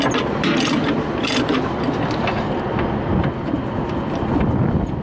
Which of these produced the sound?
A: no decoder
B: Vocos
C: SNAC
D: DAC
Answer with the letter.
A